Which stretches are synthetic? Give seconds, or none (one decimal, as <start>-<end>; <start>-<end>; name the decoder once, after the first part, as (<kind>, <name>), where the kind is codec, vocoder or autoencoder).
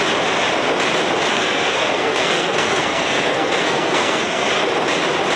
1.3-4.5 (codec, SNAC)